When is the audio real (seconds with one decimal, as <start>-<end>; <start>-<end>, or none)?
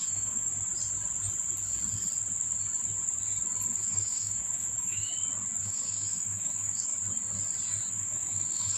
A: 0.5-3.8; 5.1-5.6; 6.9-7.9